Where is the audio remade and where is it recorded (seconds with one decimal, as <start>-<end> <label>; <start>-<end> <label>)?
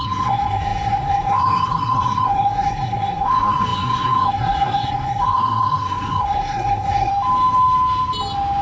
0.0-7.1 remade; 7.1-8.6 recorded